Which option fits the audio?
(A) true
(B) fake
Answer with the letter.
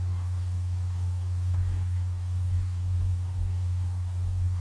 B